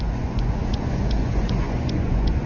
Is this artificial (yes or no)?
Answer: yes